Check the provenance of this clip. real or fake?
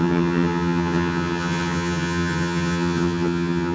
fake